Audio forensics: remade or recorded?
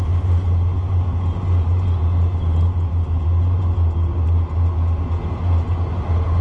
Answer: recorded